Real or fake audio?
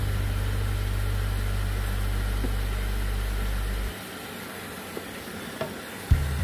real